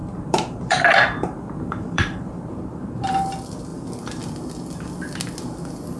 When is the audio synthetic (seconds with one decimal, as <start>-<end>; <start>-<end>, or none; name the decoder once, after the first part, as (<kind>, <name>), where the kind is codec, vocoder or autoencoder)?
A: 0.0-3.3 (vocoder, BigVGAN v2)